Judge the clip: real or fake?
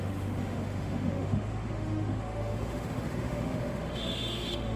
fake